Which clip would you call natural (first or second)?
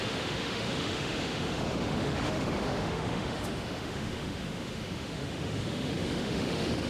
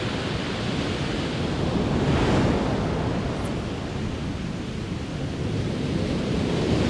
second